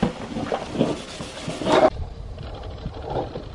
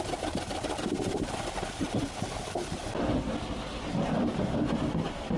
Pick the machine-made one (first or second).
first